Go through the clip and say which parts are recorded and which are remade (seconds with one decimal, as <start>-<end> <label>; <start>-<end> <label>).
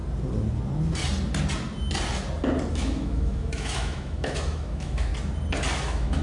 0.0-2.7 recorded; 2.7-5.1 remade; 5.1-5.8 recorded; 5.8-6.2 remade